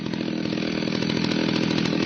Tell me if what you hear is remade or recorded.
remade